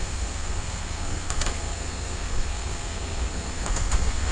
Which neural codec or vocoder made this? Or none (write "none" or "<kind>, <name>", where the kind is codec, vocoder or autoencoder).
codec, SNAC